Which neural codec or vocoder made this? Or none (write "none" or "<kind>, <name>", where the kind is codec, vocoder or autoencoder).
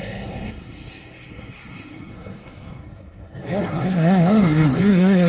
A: codec, SNAC